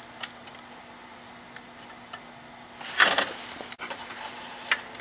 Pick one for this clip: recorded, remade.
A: recorded